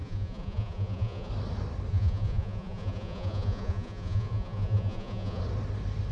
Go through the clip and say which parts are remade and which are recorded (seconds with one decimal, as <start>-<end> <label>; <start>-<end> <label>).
0.0-1.3 remade; 1.3-1.9 recorded; 1.9-5.4 remade; 5.4-6.1 recorded